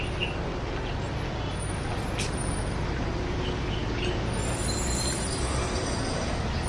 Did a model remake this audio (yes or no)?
no